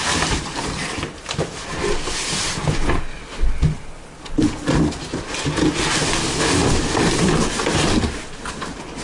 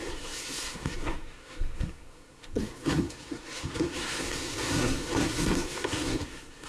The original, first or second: first